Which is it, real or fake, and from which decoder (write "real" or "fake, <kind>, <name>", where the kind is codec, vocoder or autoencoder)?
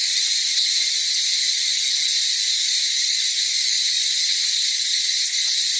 real